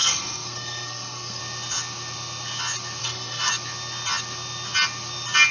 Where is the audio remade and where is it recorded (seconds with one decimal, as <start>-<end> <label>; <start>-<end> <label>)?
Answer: 0.0-1.4 remade; 1.4-3.0 recorded; 3.0-3.5 remade; 3.5-5.5 recorded